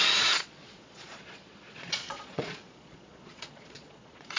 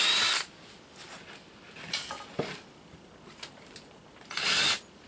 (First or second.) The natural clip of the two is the second